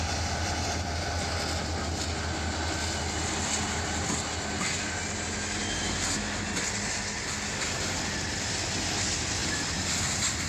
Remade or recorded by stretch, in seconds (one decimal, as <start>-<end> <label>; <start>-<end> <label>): 0.0-10.5 recorded